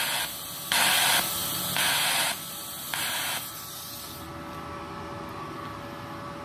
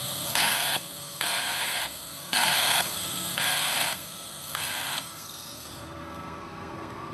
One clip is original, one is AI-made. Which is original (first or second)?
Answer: first